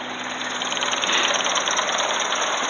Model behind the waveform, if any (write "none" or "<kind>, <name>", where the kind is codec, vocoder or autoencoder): none